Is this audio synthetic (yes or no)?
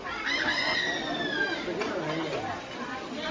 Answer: no